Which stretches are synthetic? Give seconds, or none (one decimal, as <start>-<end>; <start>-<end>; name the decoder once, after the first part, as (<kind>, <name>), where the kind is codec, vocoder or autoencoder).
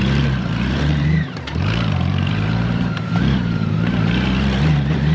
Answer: 0.0-5.1 (vocoder, BigVGAN v2)